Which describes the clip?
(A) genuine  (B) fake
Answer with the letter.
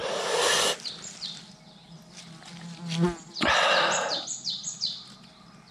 A